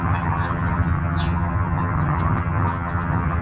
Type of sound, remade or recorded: remade